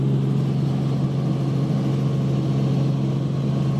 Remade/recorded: recorded